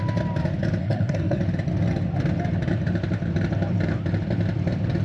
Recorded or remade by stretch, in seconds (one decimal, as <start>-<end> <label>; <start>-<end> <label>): 0.0-0.8 recorded; 0.8-1.4 remade; 1.4-5.0 recorded